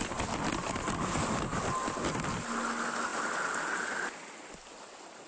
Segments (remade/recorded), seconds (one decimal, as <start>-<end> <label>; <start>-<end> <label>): 0.0-0.6 recorded; 0.6-1.1 remade; 1.1-5.3 recorded